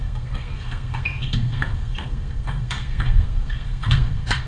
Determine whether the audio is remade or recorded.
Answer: remade